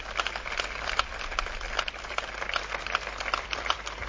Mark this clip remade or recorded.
remade